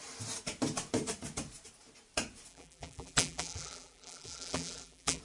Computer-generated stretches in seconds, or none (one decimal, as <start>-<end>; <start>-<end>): 2.5-5.2